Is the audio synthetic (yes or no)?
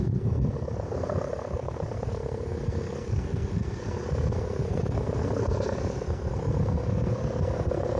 yes